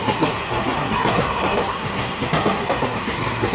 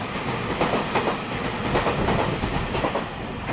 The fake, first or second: first